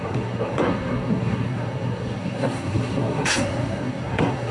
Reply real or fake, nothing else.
fake